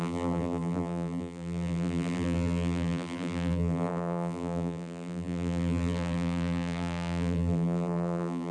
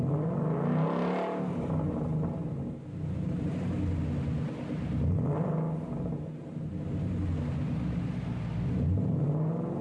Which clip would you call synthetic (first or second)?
first